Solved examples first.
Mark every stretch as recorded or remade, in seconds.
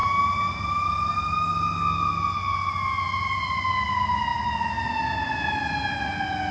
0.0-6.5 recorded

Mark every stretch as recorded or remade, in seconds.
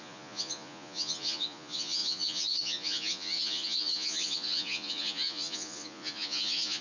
0.0-6.8 remade